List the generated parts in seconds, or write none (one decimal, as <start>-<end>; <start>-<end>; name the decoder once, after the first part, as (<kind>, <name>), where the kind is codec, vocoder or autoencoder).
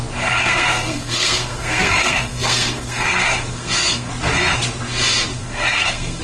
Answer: 0.4-4.1 (codec, SNAC); 5.3-6.2